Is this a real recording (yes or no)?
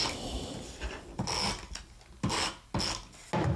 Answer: yes